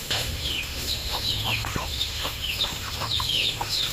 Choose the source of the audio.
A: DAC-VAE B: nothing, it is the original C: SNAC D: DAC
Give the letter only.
A